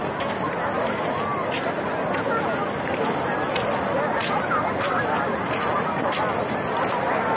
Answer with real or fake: real